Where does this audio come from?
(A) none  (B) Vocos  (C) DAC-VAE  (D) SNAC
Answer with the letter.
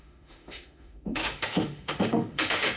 C